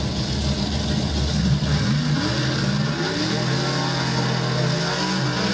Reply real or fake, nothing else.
real